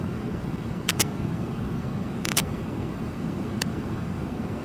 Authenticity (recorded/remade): remade